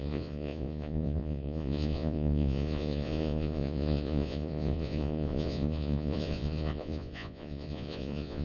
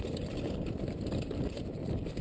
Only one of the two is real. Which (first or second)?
second